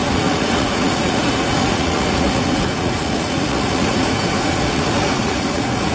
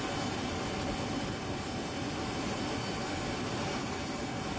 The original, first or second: second